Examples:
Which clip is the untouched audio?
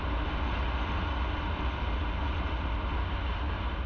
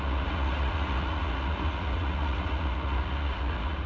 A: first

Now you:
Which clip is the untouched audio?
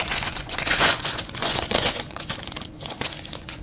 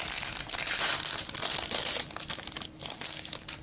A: second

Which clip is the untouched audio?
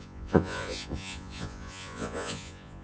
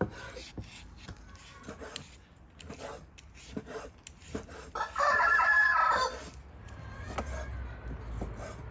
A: second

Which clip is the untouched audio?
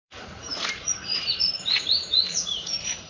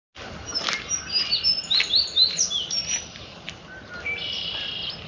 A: second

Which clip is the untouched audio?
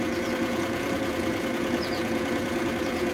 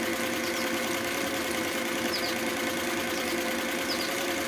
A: second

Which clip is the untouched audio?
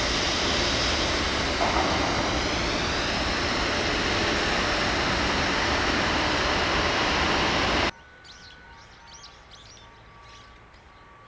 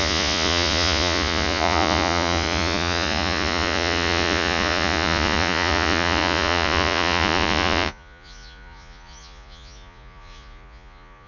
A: first